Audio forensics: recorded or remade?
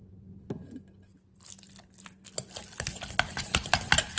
recorded